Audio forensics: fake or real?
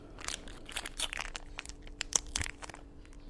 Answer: fake